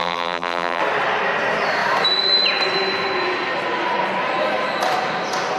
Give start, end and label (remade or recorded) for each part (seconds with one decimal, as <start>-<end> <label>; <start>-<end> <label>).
0.0-0.8 remade; 0.8-5.6 recorded